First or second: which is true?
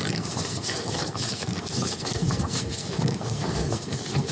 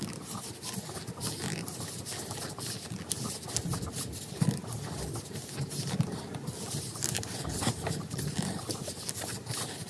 second